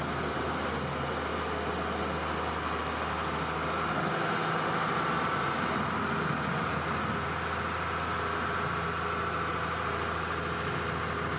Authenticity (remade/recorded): recorded